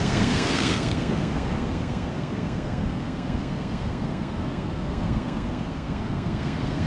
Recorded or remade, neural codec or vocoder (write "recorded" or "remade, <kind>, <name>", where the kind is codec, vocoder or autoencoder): remade, codec, SNAC